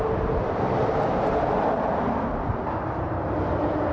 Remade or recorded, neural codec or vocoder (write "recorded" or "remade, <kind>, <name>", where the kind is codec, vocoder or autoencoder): recorded